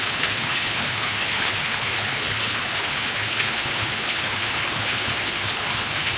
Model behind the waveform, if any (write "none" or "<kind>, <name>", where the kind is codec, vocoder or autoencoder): codec, HILCodec